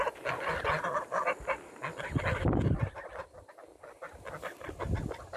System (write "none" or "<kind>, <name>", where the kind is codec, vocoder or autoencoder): none